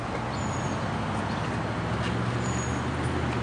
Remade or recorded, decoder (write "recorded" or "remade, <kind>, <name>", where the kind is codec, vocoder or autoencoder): recorded